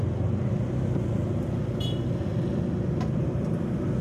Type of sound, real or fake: real